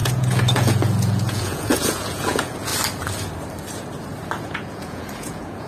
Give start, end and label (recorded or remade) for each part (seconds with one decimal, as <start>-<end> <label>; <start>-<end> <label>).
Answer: 0.0-2.7 remade; 2.7-4.4 recorded; 4.4-5.7 remade